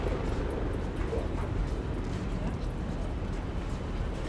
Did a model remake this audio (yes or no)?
no